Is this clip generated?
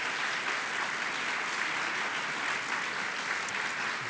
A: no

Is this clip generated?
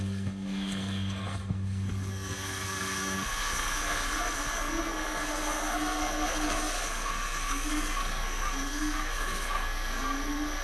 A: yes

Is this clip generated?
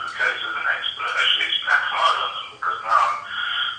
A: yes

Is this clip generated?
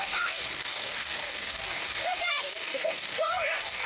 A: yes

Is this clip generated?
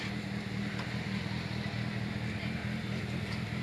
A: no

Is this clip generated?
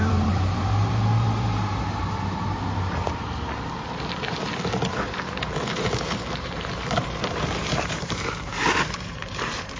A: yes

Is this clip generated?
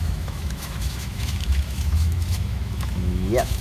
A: yes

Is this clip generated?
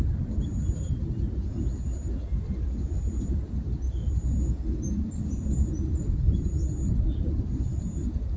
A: yes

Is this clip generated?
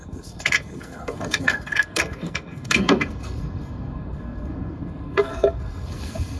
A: yes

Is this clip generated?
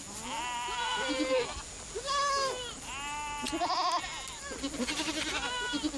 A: no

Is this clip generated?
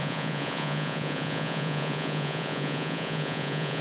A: yes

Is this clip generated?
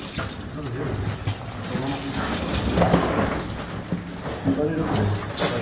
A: no